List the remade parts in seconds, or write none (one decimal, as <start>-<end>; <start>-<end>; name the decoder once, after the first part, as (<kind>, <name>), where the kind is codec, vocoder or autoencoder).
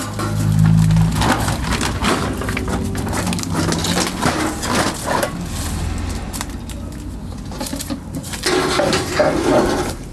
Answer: 7.7-8.4 (vocoder, BigVGAN v2)